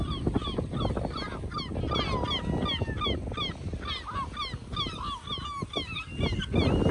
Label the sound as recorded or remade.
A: recorded